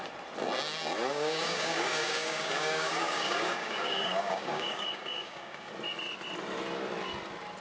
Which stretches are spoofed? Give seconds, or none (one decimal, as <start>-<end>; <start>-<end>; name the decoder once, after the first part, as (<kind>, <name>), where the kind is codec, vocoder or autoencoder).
1.1-5.7 (codec, DAC)